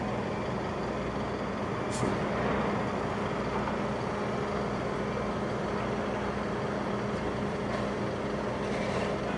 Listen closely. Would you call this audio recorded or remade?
recorded